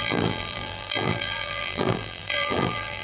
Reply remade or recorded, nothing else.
remade